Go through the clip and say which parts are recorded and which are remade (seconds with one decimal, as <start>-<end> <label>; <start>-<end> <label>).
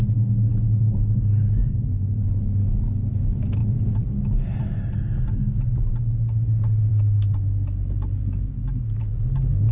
0.0-1.6 recorded; 1.6-2.4 remade; 2.4-3.6 recorded; 3.6-4.2 remade; 4.2-9.7 recorded